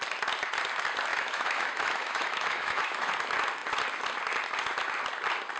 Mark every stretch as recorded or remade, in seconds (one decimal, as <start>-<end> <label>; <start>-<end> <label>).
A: 0.0-1.1 recorded; 1.1-3.1 remade; 3.1-5.6 recorded